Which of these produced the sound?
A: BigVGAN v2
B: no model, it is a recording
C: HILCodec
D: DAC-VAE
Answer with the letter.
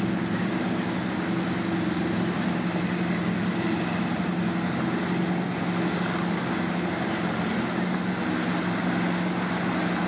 B